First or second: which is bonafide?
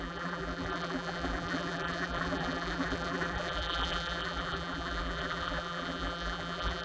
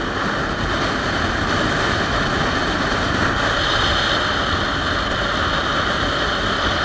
second